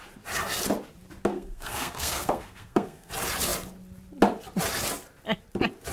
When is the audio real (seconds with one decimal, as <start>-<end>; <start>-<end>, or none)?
0.0-1.3; 3.1-5.9